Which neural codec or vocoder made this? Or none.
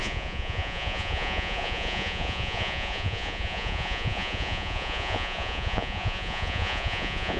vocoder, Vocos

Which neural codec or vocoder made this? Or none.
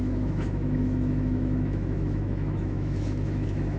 autoencoder, DAC-VAE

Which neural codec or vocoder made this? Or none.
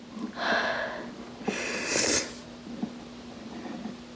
none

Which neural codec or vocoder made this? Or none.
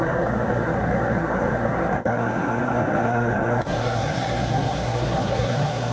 codec, SNAC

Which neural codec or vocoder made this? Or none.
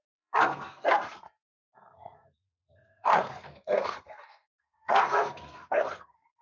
codec, SNAC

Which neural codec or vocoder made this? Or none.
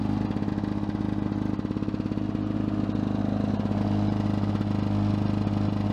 none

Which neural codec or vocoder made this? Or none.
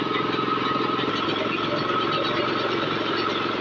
none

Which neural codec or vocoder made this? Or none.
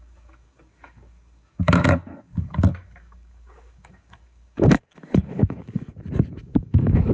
codec, DAC